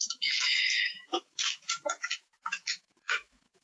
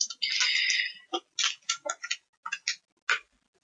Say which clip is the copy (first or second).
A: first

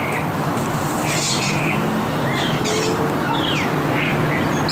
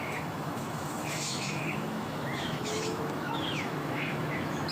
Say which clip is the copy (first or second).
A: second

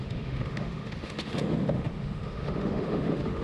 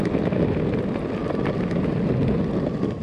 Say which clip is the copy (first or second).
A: first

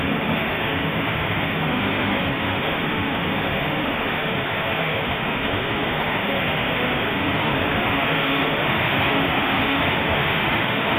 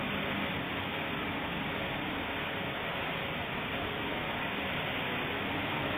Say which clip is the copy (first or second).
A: first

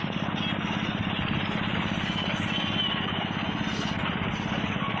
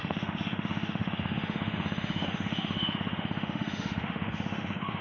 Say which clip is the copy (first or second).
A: second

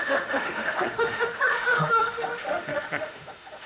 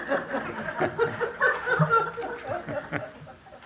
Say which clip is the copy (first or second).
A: first